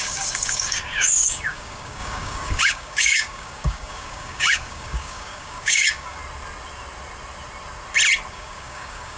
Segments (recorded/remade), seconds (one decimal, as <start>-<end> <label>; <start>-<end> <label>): 0.0-6.2 remade; 6.2-8.3 recorded; 8.3-9.2 remade

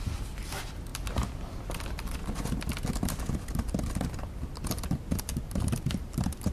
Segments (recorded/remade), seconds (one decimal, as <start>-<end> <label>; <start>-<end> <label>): 0.0-6.5 recorded

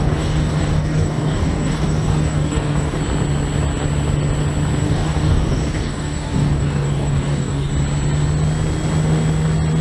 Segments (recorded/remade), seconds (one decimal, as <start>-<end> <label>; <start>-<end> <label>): 0.0-3.0 remade; 3.0-4.8 recorded; 4.8-7.7 remade; 7.7-9.8 recorded

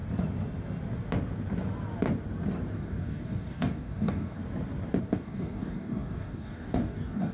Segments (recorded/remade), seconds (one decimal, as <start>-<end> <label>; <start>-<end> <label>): 0.0-2.7 recorded; 2.7-4.4 remade; 4.4-5.0 recorded; 5.0-7.3 remade

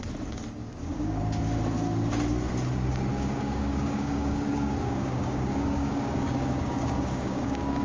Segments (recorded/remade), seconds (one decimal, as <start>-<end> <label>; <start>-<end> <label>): 0.0-0.6 recorded; 0.6-1.2 remade; 1.2-3.1 recorded; 3.1-7.8 remade

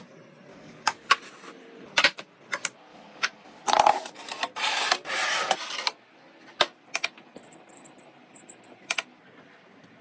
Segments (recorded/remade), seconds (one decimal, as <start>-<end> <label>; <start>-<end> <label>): 0.0-0.5 recorded; 0.5-1.2 remade; 1.2-2.9 recorded; 2.9-3.6 remade; 3.6-10.0 recorded

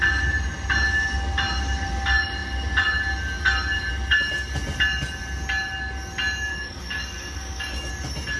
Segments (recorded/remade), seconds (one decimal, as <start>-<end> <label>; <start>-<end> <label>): 0.0-6.5 recorded; 6.5-7.9 remade; 7.9-8.4 recorded